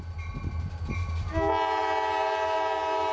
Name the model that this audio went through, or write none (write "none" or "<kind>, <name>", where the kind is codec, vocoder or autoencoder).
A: none